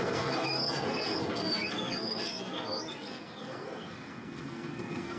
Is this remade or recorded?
remade